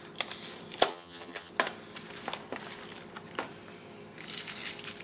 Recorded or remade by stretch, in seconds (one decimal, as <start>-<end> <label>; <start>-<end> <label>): 0.0-0.9 recorded; 0.9-1.5 remade; 1.5-5.0 recorded

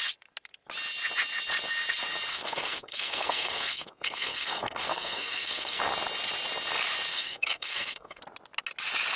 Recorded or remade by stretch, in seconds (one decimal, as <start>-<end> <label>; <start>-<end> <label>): 0.0-2.3 recorded; 2.3-5.8 remade; 5.8-7.1 recorded; 7.1-8.2 remade; 8.2-9.2 recorded

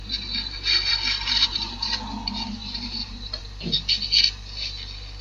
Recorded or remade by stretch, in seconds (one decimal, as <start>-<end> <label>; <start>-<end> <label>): 0.0-0.9 recorded; 0.9-1.9 remade; 1.9-2.6 recorded; 2.6-3.4 remade; 3.4-5.2 recorded

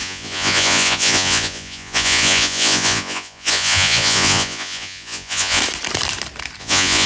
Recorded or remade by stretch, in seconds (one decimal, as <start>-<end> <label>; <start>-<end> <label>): 0.0-5.6 remade; 5.6-6.6 recorded; 6.6-7.1 remade